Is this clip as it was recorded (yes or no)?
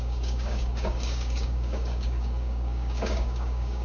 no